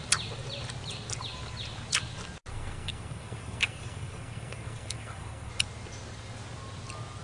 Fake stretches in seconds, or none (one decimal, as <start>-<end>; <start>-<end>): 2.5-5.5